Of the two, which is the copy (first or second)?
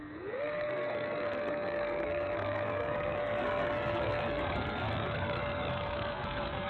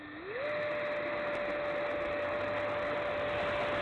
first